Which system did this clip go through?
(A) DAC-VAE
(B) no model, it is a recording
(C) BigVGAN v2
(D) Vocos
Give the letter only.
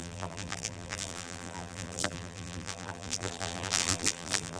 C